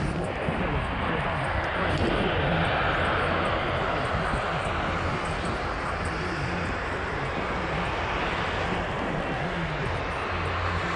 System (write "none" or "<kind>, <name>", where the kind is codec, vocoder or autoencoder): none